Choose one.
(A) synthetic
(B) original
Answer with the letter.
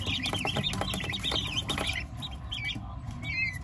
B